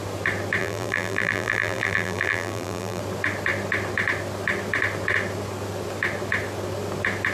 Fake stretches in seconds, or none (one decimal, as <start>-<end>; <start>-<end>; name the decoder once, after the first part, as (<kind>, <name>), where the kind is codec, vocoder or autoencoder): 0.6-3.0 (vocoder, BigVGAN v2)